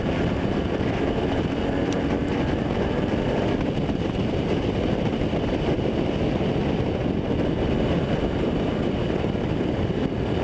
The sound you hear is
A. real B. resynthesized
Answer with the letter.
A